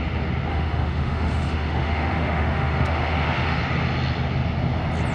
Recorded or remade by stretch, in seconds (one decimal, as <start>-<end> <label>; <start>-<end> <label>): 0.0-0.5 recorded; 0.5-3.6 remade; 3.6-5.1 recorded